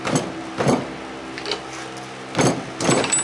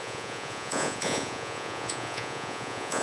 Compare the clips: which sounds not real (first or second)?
second